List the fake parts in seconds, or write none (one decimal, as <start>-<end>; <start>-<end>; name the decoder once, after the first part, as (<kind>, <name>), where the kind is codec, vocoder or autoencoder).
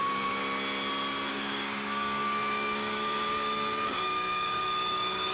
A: 0.0-0.4 (codec, DAC); 1.3-5.3